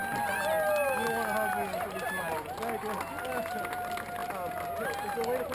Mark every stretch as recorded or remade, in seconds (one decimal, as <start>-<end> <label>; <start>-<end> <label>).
0.0-5.5 recorded